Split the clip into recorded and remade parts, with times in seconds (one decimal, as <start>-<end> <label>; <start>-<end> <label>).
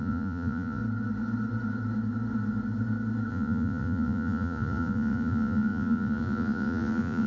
0.0-0.8 remade; 0.8-3.3 recorded; 3.3-7.3 remade